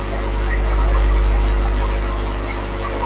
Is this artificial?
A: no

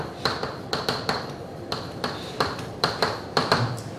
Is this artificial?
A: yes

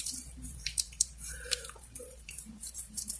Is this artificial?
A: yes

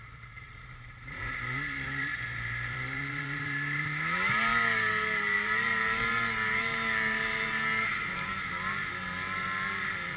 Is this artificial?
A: yes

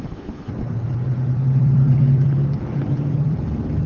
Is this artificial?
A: yes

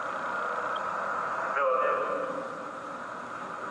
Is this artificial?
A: no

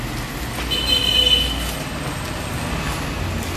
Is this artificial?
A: no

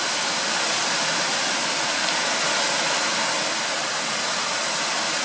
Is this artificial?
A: no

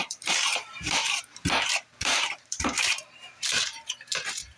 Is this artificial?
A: yes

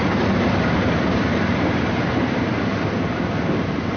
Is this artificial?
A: yes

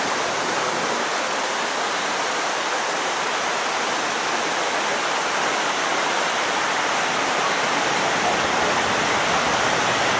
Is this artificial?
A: yes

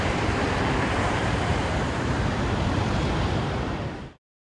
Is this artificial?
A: yes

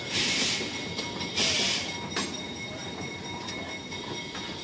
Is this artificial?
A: no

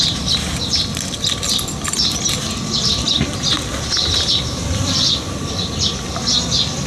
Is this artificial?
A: no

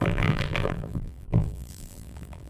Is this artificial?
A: yes